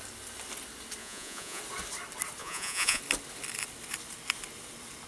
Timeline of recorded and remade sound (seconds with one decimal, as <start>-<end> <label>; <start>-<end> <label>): 0.0-1.0 recorded; 1.0-1.6 remade; 1.6-2.4 recorded; 2.4-3.0 remade; 3.0-5.1 recorded